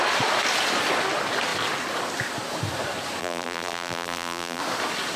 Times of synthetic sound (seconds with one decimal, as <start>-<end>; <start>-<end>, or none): 3.2-4.6